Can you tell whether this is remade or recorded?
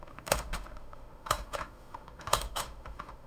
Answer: remade